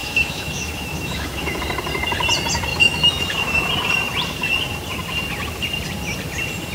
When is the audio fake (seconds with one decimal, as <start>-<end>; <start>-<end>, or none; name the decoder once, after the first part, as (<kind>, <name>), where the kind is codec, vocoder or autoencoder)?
0.0-1.6 (autoencoder, DAC-VAE); 2.7-3.7